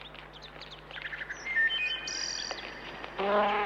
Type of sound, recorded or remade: recorded